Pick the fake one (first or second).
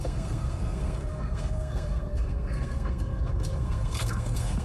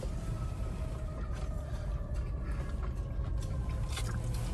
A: first